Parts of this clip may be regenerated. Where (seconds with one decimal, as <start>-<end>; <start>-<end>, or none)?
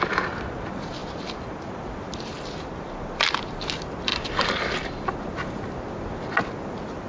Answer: 1.0-2.0; 4.1-5.1